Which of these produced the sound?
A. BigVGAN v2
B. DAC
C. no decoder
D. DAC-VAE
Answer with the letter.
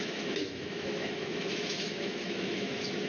D